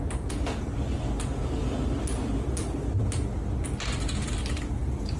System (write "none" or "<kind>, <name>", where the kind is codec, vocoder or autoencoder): none